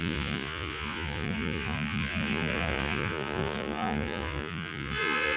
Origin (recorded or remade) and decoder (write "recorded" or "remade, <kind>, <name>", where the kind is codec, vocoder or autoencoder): remade, vocoder, Vocos